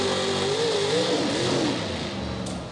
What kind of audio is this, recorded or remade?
recorded